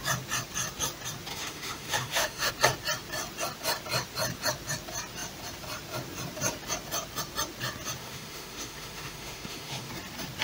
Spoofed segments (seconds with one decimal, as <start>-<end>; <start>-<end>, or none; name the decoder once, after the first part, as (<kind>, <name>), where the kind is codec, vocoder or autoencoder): 1.3-2.5 (autoencoder, DAC-VAE); 8.0-9.9